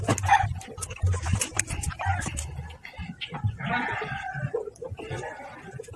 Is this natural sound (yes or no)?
yes